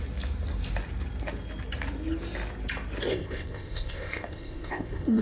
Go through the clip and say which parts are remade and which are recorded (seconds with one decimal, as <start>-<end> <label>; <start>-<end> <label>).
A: 0.0-3.1 recorded; 3.1-5.2 remade